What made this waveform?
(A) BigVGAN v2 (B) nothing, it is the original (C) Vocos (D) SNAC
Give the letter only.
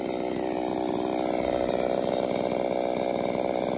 B